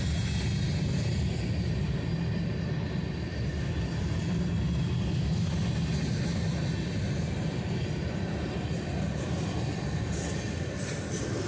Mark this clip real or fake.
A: real